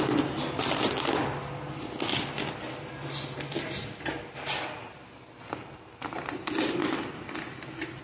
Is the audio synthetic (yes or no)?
no